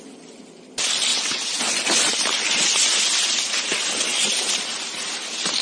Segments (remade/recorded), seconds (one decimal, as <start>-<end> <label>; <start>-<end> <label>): 0.0-1.1 recorded; 1.1-1.6 remade; 1.6-5.6 recorded